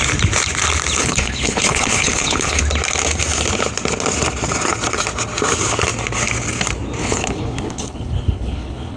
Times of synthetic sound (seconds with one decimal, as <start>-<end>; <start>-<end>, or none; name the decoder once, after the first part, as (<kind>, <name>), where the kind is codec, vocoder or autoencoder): 1.0-2.6 (codec, HILCodec); 7.0-9.0